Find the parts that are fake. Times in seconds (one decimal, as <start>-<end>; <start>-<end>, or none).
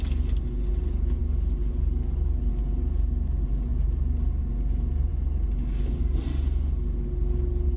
none